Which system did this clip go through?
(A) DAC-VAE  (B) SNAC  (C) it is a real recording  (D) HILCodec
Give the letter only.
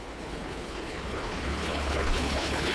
D